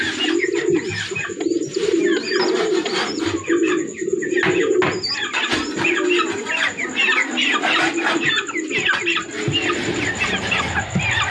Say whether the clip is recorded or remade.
recorded